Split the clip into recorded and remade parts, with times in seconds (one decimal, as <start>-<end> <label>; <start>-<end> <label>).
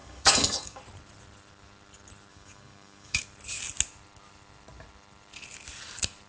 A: 0.0-0.8 remade; 0.8-2.3 recorded; 2.3-3.2 remade; 3.2-6.3 recorded